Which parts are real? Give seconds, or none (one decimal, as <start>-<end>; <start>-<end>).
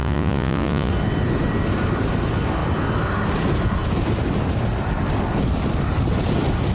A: 0.9-6.7